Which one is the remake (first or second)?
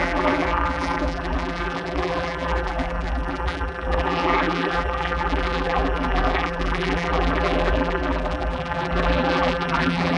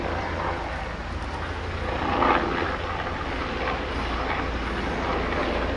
first